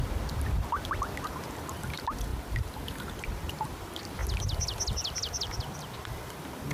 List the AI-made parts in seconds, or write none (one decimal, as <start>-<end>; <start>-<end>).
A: 0.0-2.3; 3.2-4.2; 4.9-6.7